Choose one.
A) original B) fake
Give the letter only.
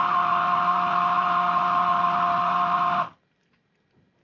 A